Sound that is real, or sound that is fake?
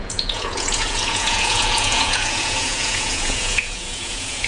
fake